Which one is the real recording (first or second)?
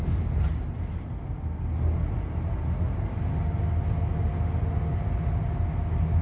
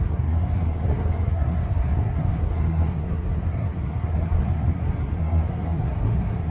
first